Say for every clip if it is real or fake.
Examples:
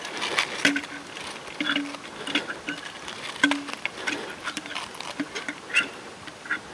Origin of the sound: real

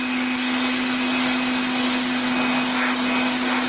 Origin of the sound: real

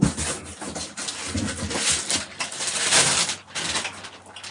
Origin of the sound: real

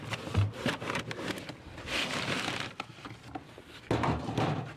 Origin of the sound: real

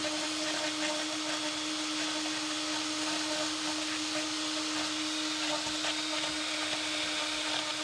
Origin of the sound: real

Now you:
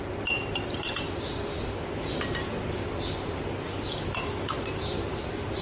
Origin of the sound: real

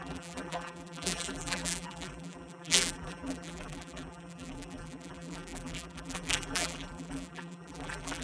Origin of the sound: fake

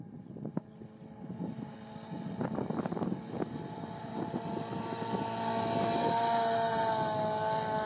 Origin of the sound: real